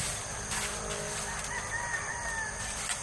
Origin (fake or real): real